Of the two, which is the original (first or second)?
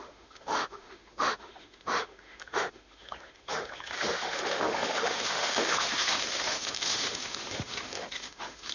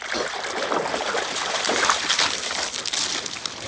second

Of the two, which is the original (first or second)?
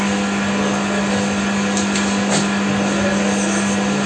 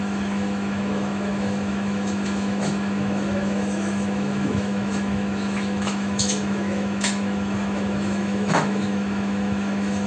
first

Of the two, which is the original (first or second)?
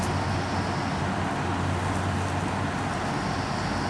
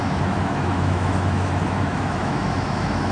first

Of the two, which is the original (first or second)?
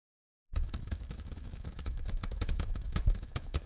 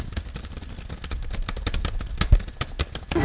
second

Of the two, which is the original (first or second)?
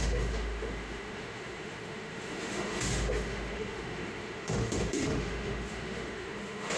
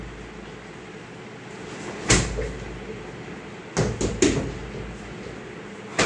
second